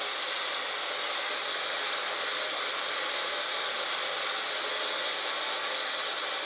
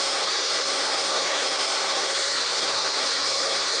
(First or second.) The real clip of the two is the first